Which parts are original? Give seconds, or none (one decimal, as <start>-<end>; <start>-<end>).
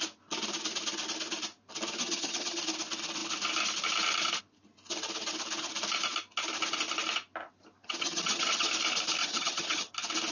0.0-2.0; 2.6-7.8; 8.7-9.2; 9.9-10.3